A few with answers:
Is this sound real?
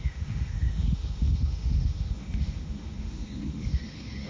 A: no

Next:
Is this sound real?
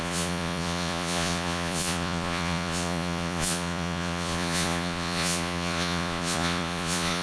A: no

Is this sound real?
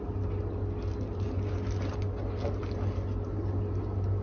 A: yes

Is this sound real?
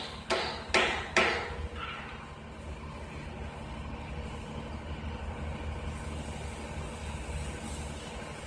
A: yes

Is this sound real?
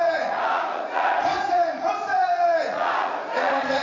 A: no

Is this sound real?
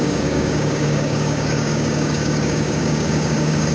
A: no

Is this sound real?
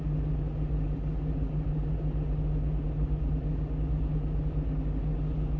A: yes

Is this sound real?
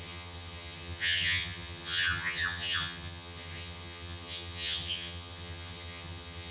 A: no